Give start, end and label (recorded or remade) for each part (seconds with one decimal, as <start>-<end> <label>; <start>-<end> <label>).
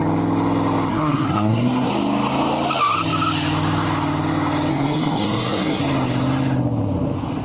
0.0-0.9 recorded; 0.9-1.9 remade; 1.9-4.7 recorded; 4.7-5.8 remade; 5.8-7.4 recorded